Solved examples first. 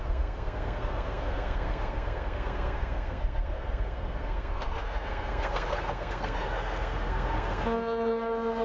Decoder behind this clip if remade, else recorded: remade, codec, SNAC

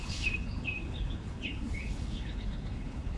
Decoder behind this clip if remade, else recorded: remade, codec, HILCodec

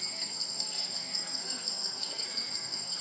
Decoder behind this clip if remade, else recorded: remade, codec, SNAC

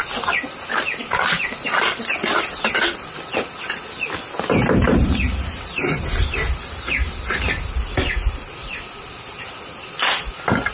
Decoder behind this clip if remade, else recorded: recorded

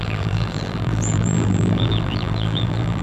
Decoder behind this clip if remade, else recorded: remade, vocoder, BigVGAN v2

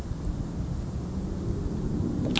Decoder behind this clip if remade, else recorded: recorded